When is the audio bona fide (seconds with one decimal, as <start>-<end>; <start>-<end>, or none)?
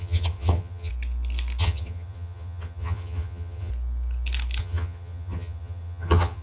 0.9-1.6; 3.7-4.6